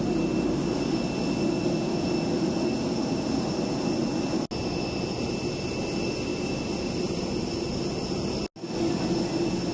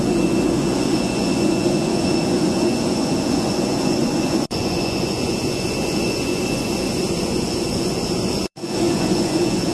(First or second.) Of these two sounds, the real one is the first